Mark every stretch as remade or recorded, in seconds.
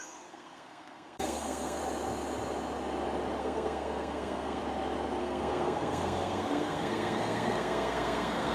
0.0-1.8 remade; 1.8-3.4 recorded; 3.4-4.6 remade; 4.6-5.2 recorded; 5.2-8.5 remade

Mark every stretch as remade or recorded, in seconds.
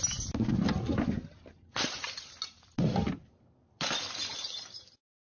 0.0-5.3 recorded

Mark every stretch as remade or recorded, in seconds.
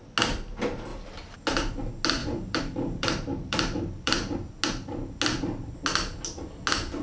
0.0-2.2 recorded; 2.2-4.5 remade; 4.5-7.0 recorded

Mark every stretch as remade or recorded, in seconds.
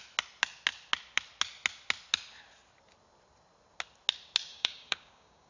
0.0-4.5 recorded; 4.5-5.5 remade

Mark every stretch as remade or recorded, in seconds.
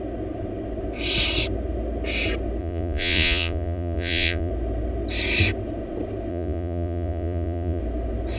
0.0-2.6 recorded; 2.6-4.5 remade; 4.5-6.3 recorded; 6.3-7.8 remade; 7.8-8.4 recorded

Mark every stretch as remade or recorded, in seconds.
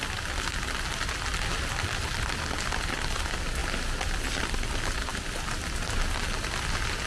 0.0-7.1 recorded